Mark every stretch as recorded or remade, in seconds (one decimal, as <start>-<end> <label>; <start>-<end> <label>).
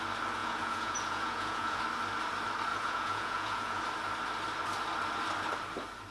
0.0-0.4 recorded; 0.4-1.8 remade; 1.8-2.7 recorded; 2.7-3.8 remade; 3.8-6.1 recorded